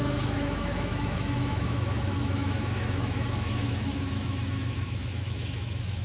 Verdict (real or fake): fake